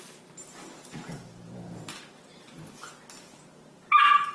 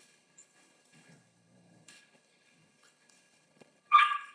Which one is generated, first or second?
second